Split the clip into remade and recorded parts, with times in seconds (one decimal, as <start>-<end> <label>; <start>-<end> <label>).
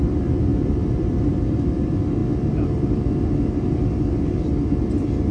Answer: 0.0-2.2 remade; 2.2-5.3 recorded